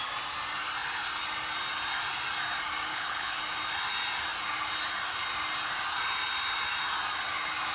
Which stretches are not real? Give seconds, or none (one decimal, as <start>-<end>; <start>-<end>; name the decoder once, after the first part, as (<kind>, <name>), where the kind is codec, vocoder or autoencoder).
2.9-3.4 (codec, HILCodec)